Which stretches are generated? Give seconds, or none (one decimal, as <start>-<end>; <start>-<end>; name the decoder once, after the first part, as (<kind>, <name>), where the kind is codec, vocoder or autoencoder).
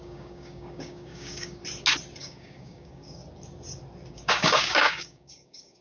0.0-1.6 (codec, DAC); 2.2-3.2; 4.1-5.8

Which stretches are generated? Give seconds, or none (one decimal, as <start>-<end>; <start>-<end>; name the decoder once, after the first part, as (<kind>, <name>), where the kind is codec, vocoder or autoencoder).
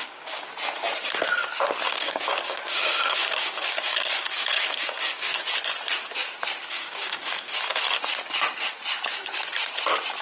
0.0-0.5 (codec, DAC); 1.9-5.3; 6.7-7.5